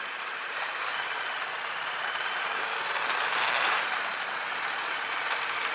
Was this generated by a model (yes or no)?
yes